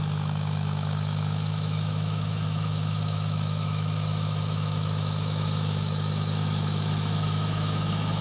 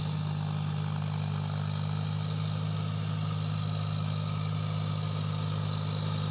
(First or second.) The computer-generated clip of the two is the first